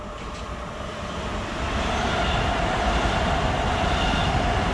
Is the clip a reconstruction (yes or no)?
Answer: no